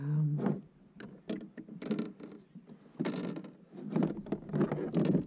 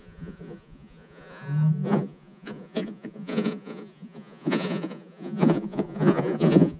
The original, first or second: first